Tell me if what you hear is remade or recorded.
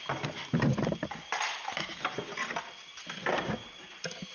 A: recorded